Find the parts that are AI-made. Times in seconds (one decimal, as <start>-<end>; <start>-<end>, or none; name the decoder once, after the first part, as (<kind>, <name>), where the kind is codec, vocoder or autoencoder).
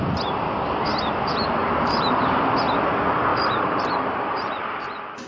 1.6-2.4 (vocoder, BigVGAN v2); 3.3-4.8